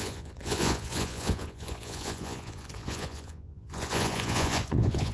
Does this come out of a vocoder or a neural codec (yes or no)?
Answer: yes